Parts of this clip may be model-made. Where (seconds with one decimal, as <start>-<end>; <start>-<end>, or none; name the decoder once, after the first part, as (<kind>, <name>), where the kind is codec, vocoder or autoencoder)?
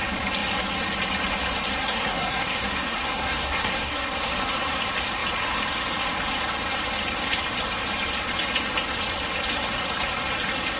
1.8-4.3 (codec, SNAC)